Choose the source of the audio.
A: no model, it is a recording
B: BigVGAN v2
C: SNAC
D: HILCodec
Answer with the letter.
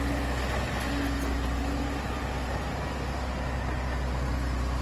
A